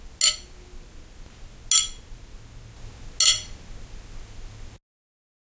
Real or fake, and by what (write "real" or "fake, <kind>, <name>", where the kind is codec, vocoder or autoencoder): real